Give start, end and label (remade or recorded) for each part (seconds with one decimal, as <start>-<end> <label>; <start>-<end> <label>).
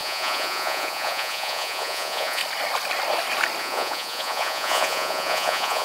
0.0-2.4 remade; 2.4-3.6 recorded; 3.6-5.8 remade